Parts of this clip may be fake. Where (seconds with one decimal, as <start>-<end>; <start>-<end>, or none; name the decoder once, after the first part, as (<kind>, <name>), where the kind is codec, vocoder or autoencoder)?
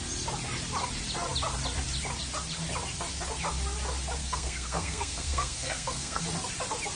4.2-6.2 (codec, SNAC)